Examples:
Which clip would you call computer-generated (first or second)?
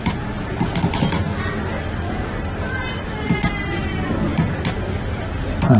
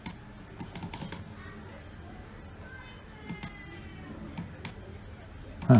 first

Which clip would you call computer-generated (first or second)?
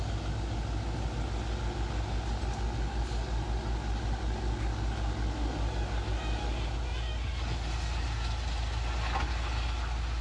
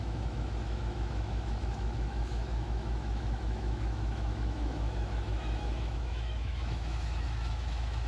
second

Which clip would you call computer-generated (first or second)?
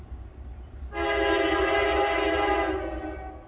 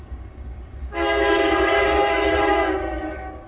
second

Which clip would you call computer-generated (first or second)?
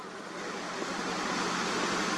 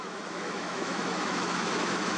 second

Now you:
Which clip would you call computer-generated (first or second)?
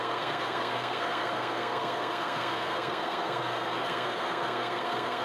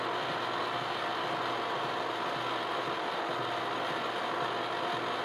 first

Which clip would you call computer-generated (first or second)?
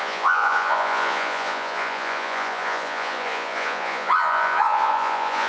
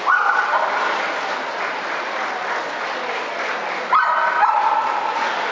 first